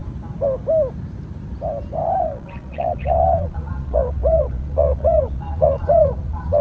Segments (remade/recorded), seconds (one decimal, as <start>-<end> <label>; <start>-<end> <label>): 0.0-2.2 recorded; 2.2-6.6 remade